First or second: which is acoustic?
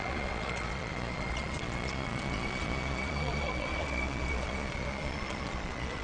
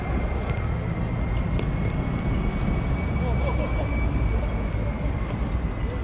second